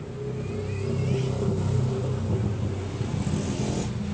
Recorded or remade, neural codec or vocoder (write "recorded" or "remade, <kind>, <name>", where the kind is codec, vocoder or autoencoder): recorded